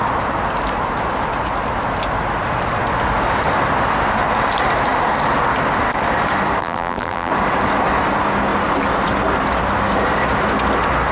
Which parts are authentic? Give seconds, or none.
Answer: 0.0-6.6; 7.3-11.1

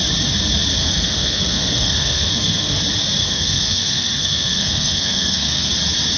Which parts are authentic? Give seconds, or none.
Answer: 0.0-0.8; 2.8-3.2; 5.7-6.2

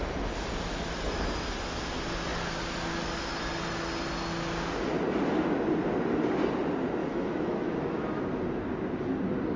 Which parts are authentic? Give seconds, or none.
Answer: 0.0-7.0; 8.2-9.6